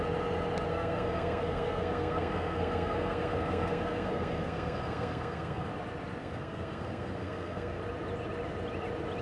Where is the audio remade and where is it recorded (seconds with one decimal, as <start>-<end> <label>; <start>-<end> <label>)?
0.0-0.7 recorded; 0.7-5.7 remade; 5.7-6.2 recorded; 6.2-7.8 remade; 7.8-9.2 recorded